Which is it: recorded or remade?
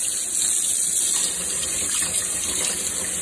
recorded